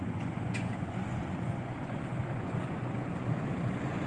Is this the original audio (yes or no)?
no